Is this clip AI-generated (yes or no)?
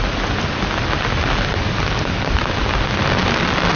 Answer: no